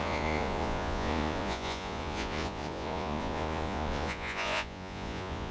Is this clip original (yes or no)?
no